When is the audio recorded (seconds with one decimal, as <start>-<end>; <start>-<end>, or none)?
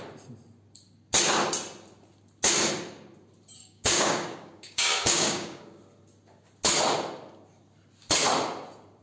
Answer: 0.0-3.6; 5.8-9.0